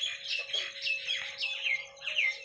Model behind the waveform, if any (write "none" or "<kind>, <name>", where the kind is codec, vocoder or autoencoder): none